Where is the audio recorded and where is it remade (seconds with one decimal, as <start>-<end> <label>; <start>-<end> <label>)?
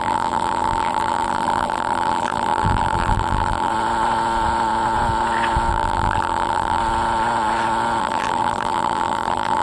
0.0-3.7 remade; 3.7-5.7 recorded; 5.7-6.8 remade; 6.8-8.0 recorded; 8.0-9.6 remade